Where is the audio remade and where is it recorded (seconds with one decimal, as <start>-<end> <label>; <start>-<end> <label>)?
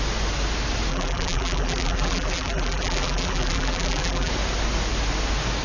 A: 0.0-0.9 recorded; 0.9-4.3 remade; 4.3-5.6 recorded